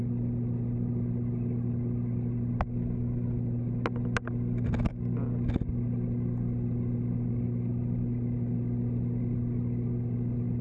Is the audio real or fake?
real